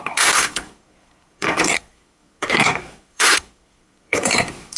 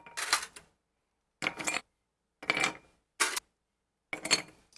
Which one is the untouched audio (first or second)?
second